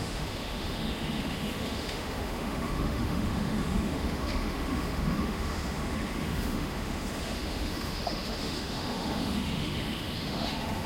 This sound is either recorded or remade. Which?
remade